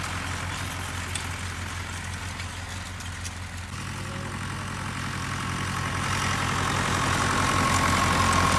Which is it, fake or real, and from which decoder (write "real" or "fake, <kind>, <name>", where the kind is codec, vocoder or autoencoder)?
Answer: real